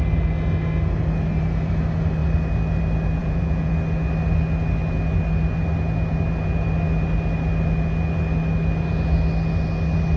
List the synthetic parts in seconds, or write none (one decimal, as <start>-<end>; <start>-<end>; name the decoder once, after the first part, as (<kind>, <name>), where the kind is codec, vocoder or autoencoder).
3.2-3.7 (vocoder, Vocos)